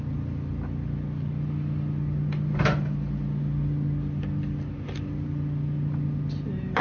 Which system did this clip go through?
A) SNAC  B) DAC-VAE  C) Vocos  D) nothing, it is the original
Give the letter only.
D